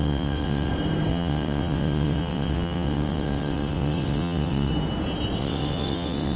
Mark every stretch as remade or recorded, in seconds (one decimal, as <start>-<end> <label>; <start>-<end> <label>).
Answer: 0.0-0.7 remade; 0.7-1.1 recorded; 1.1-4.7 remade; 4.7-5.4 recorded; 5.4-6.4 remade